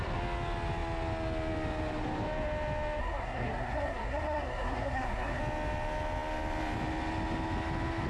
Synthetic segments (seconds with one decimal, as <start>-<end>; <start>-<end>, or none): 3.0-5.4

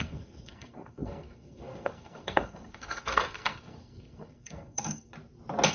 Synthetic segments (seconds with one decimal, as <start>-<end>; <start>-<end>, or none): 0.0-5.1

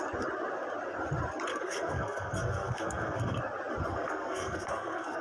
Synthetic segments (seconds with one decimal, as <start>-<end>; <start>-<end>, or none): 1.5-3.4; 3.9-5.2

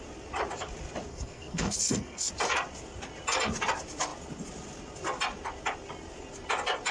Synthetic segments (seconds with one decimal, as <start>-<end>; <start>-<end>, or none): 1.1-2.3

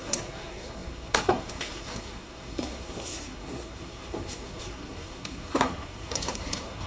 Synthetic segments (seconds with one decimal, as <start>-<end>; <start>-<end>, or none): 0.0-6.9

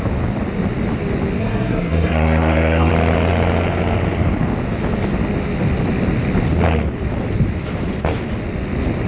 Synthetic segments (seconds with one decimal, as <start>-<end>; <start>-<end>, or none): 1.4-2.9

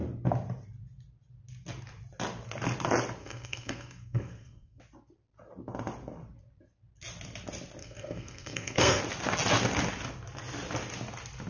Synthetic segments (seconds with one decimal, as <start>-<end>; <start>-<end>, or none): 3.2-4.8; 7.8-9.0

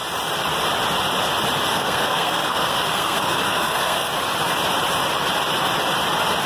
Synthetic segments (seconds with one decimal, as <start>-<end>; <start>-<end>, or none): 1.7-4.1